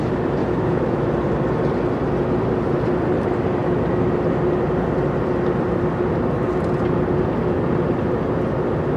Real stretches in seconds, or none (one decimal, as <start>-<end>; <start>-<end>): 0.0-0.4; 1.1-9.0